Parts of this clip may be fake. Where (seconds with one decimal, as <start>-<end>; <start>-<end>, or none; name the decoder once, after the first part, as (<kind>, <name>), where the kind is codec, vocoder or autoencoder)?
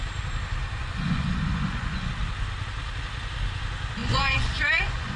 0.6-2.1 (vocoder, Vocos); 4.0-5.2